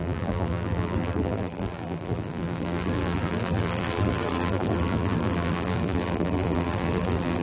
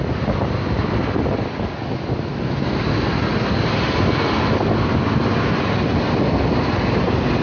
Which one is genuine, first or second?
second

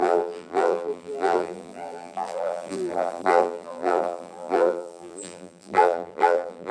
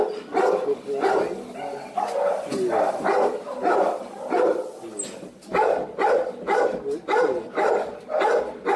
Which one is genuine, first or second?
second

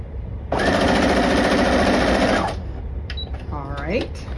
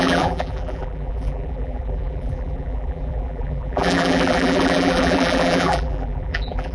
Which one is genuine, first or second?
first